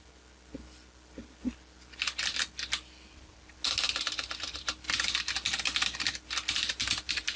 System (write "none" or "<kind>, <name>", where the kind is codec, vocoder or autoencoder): none